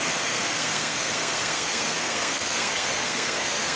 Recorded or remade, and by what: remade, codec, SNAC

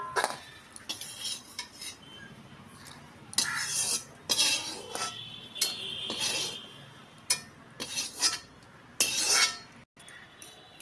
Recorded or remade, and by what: recorded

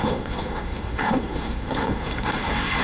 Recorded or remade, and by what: remade, codec, SNAC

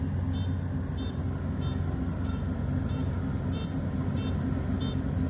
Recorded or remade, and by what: recorded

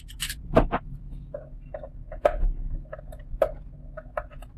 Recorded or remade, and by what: recorded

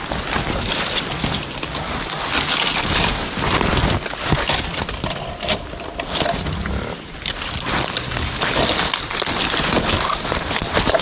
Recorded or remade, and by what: recorded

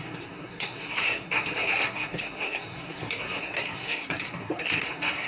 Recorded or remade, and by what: remade, codec, SNAC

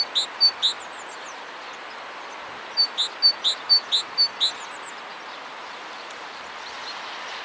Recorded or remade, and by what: recorded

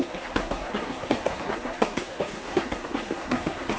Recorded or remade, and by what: remade, codec, SNAC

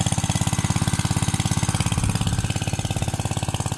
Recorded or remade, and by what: recorded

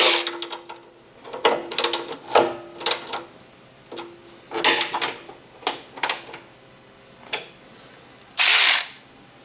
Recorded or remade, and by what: recorded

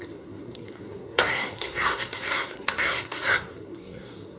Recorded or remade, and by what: remade, codec, SNAC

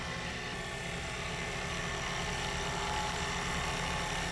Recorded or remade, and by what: recorded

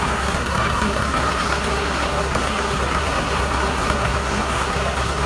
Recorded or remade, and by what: remade, codec, SNAC